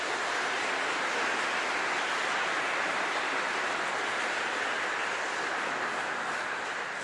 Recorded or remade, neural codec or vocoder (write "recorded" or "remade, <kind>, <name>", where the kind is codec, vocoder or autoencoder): recorded